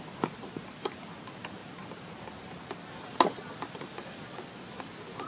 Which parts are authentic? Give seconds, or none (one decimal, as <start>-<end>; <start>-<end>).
0.0-5.3